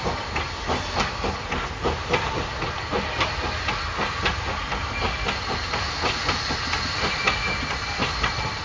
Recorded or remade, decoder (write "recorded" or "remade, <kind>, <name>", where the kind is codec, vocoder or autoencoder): recorded